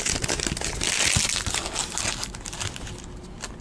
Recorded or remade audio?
recorded